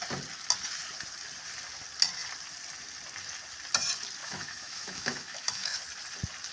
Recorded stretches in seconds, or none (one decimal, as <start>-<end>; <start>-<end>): 0.0-4.2; 5.8-6.5